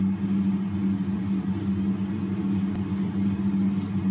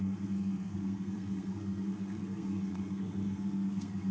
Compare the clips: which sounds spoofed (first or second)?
second